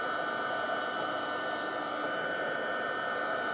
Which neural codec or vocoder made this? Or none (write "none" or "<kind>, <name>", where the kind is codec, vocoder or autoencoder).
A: none